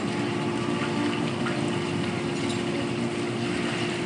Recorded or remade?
recorded